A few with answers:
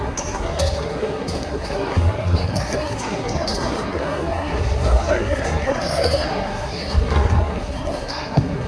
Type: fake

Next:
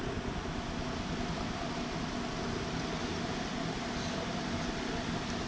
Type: real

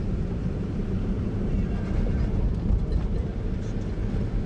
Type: fake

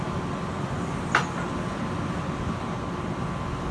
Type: real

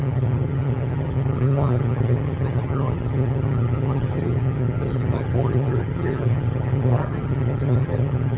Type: fake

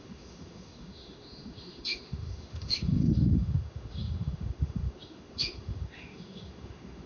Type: fake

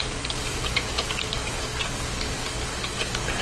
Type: fake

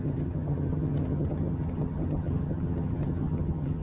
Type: fake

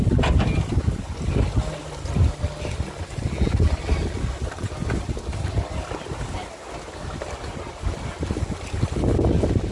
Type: real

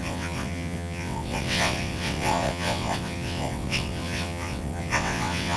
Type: fake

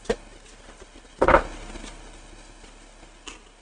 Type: real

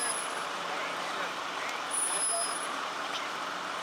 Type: fake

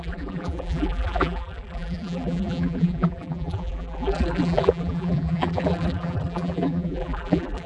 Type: fake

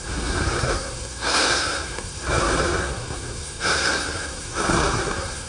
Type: fake